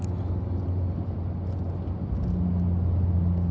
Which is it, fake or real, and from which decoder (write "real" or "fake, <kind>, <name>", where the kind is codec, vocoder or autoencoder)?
real